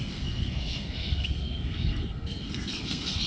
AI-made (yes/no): yes